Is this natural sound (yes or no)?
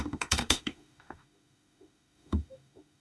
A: no